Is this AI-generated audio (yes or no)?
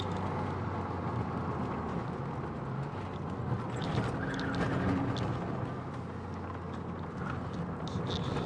no